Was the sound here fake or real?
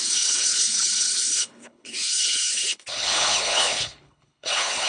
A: fake